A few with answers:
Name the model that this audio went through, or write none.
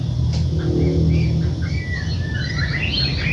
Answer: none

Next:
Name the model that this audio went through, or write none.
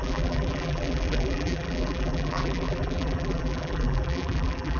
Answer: vocoder, BigVGAN v2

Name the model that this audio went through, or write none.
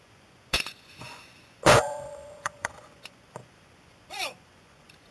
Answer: vocoder, Vocos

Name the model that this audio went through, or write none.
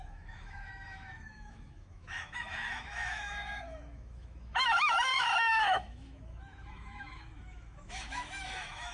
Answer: autoencoder, DAC-VAE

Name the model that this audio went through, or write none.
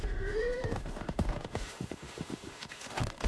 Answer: autoencoder, DAC-VAE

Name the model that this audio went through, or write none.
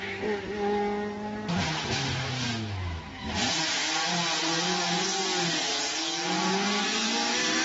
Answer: none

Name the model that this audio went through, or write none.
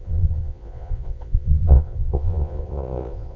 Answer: vocoder, Vocos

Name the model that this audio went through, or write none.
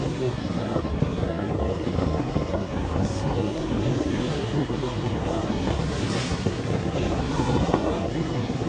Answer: codec, SNAC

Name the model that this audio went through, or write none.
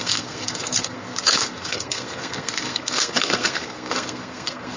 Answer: codec, SNAC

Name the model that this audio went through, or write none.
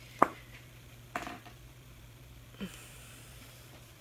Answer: vocoder, BigVGAN v2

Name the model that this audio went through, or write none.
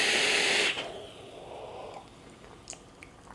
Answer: none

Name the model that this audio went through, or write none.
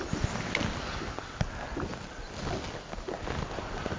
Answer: none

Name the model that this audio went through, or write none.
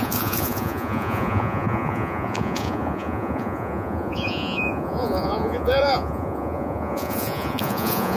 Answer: vocoder, Vocos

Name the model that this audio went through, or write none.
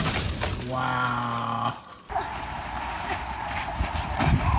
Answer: none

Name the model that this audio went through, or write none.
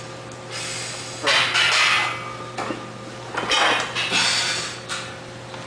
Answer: none